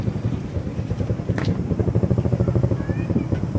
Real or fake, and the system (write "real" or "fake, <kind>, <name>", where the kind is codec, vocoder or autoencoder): fake, vocoder, BigVGAN v2